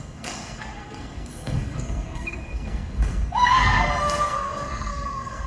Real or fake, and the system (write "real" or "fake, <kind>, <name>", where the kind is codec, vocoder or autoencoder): fake, codec, SNAC